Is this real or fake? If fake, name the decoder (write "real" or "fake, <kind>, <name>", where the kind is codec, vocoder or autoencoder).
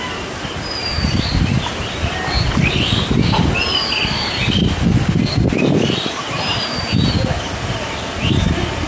real